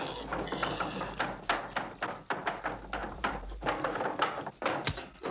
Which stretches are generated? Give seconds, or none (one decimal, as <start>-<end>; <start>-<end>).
0.6-1.2; 3.0-4.6

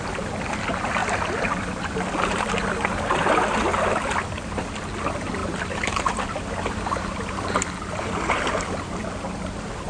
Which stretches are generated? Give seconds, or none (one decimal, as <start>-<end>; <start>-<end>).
1.0-1.8; 5.4-8.8

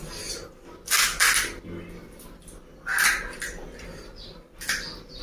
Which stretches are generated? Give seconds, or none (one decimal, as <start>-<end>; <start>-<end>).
2.9-5.2

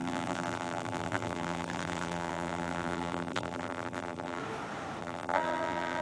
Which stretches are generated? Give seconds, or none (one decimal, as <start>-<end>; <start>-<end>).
0.0-4.4; 5.0-6.0

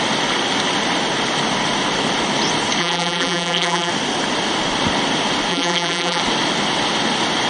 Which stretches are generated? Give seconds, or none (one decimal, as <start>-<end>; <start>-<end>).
2.8-3.9; 5.5-6.2

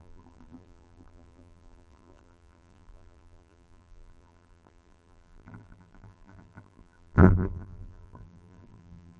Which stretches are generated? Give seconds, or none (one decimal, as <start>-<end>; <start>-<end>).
0.0-9.2

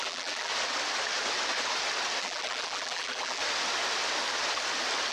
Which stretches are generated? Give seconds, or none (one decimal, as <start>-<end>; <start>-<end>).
0.0-0.5; 2.2-3.4

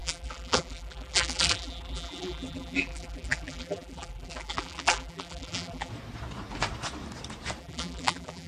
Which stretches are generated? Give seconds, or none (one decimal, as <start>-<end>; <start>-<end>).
0.0-5.9; 7.6-8.5